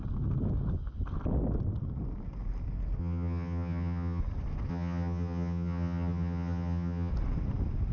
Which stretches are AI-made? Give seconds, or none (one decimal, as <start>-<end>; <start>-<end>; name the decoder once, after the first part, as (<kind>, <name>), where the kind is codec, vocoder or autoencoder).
3.0-4.2 (vocoder, HiFi-GAN); 4.7-7.1